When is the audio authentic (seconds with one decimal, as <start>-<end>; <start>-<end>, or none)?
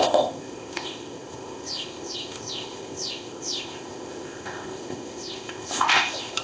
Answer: none